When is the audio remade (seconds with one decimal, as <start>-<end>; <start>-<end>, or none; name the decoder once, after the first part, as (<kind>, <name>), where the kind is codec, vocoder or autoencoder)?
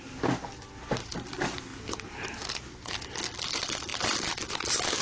none